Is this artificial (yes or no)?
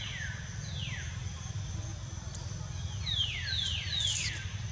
no